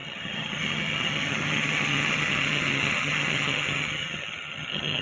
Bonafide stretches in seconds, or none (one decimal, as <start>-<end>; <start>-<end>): none